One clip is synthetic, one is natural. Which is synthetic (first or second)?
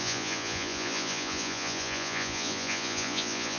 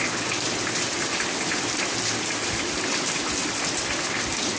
first